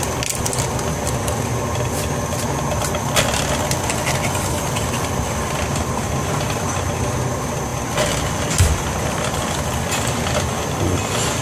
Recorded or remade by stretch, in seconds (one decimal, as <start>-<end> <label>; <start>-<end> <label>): 0.0-7.7 recorded; 7.7-9.7 remade; 9.7-11.4 recorded